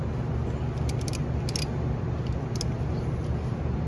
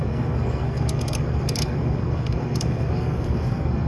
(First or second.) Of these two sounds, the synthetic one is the second